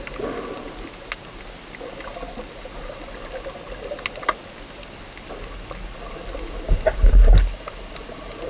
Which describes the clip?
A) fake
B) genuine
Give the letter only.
B